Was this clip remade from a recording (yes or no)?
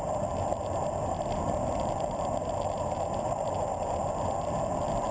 no